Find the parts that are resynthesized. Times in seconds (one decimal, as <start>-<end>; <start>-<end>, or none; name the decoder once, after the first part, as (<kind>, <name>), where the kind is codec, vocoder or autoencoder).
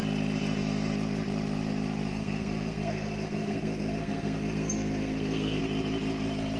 2.1-5.6 (codec, SNAC)